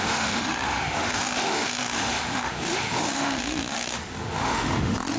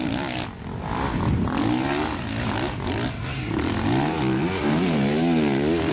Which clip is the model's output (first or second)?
first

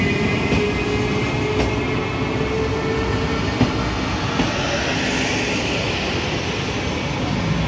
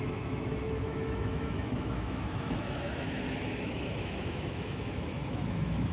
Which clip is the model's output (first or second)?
second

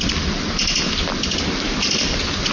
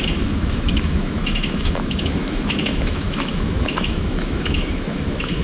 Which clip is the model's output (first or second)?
second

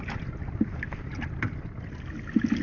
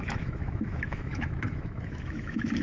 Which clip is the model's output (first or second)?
second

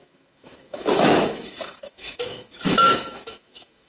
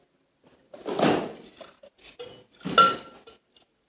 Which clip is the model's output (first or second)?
first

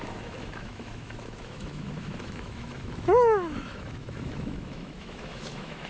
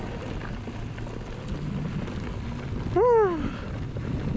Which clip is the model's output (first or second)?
first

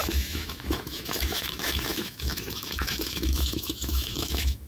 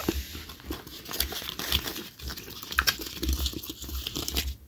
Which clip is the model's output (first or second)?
first